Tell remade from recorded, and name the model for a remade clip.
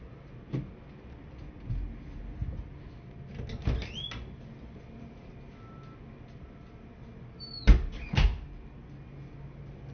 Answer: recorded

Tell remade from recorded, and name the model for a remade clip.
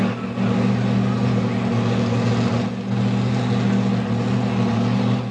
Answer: recorded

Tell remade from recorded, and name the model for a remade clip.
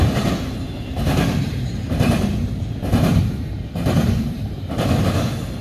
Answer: remade, vocoder, BigVGAN v2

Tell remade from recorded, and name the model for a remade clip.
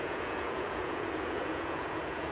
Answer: remade, vocoder, Vocos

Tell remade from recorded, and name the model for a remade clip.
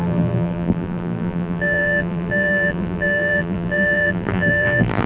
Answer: remade, vocoder, BigVGAN v2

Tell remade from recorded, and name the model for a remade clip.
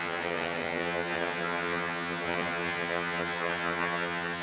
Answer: remade, vocoder, HiFi-GAN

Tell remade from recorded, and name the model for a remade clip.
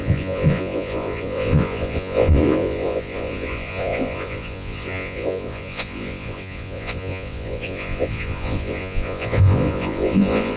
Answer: remade, vocoder, Vocos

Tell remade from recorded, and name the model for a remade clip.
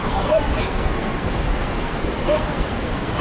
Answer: remade, codec, SNAC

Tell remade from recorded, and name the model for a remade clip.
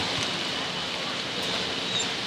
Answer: recorded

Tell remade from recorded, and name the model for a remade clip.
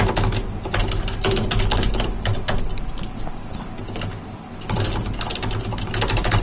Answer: recorded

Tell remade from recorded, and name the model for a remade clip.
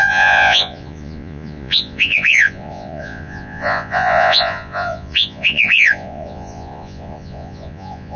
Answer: remade, vocoder, Vocos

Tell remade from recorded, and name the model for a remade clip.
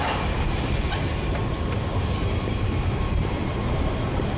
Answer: remade, vocoder, BigVGAN v2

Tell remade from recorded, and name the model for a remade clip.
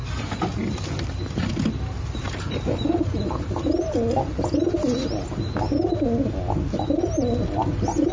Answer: recorded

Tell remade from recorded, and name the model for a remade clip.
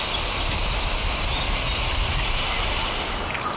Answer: recorded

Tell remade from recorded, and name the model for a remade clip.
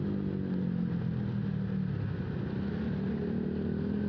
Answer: recorded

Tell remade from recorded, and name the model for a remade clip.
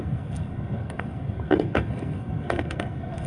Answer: remade, codec, SNAC